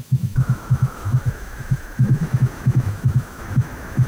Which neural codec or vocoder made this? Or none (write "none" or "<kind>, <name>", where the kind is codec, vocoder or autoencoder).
autoencoder, DAC-VAE